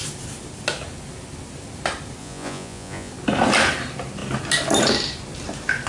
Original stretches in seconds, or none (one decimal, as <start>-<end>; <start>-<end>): 0.0-2.2; 3.1-5.9